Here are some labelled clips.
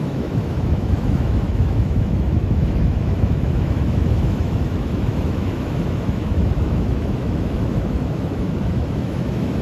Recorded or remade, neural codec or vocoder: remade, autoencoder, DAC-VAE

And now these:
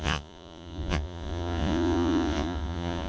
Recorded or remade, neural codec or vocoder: remade, vocoder, Vocos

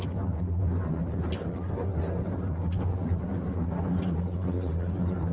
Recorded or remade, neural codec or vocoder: recorded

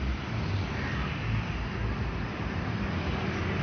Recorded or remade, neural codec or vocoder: recorded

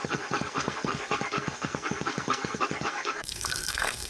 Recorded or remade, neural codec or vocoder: remade, codec, SNAC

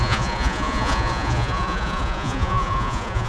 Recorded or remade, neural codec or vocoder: remade, vocoder, Vocos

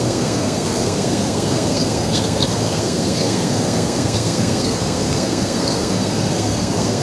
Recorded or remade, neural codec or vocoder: remade, codec, SNAC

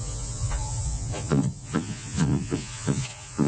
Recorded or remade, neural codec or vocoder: remade, vocoder, Vocos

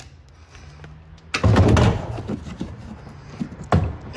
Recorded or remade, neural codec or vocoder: recorded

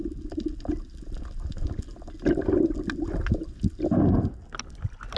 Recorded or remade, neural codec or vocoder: recorded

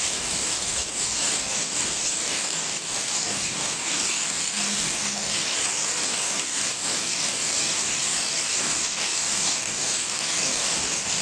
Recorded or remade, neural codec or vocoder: remade, codec, DAC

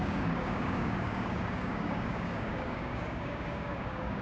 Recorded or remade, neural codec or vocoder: remade, codec, DAC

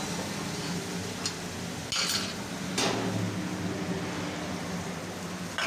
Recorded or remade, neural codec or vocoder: recorded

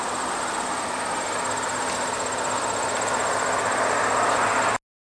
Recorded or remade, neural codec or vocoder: recorded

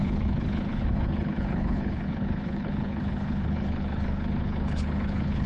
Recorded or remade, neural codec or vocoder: remade, codec, HILCodec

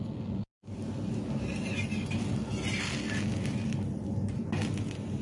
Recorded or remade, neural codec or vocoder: recorded